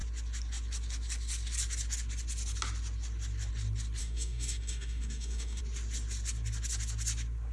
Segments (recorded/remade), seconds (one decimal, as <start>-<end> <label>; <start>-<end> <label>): 0.0-4.0 recorded; 4.0-5.6 remade; 5.6-7.5 recorded